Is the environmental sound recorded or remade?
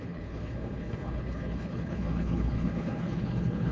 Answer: remade